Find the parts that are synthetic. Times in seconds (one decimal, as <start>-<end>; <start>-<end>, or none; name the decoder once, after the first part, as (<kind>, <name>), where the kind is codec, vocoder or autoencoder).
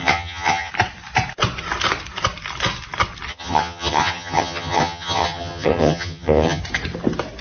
0.0-0.7 (vocoder, HiFi-GAN); 3.3-6.6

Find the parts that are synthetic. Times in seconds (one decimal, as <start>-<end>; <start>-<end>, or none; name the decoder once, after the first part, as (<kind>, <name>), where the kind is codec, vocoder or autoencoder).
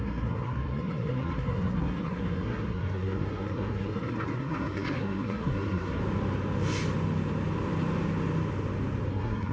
0.0-6.0 (codec, SNAC); 9.1-9.5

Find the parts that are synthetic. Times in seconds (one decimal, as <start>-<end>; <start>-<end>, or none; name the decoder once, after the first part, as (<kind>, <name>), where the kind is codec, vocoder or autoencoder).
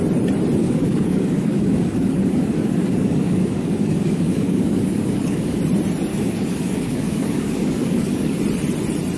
0.6-5.6 (codec, DAC); 6.1-8.4